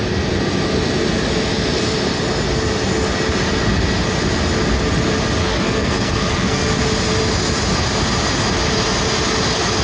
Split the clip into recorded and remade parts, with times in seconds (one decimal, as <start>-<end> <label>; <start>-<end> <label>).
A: 0.0-5.4 recorded; 5.4-6.7 remade; 6.7-9.8 recorded